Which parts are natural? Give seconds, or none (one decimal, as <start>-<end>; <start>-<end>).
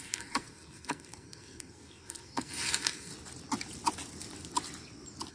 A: 3.1-5.3